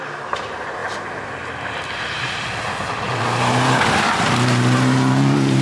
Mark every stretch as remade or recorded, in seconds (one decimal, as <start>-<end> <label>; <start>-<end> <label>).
0.0-5.6 recorded

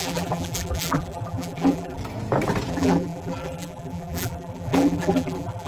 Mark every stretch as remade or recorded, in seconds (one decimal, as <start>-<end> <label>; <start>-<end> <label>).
0.0-2.0 remade; 2.0-2.7 recorded; 2.7-5.7 remade

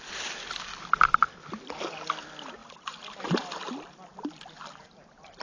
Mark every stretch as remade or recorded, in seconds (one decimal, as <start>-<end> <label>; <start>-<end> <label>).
0.0-5.4 recorded

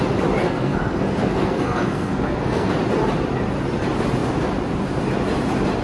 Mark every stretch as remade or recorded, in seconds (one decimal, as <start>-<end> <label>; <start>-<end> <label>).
0.0-0.4 recorded; 0.4-2.7 remade; 2.7-5.8 recorded